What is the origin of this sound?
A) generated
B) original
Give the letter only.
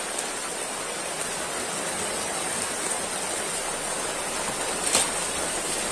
B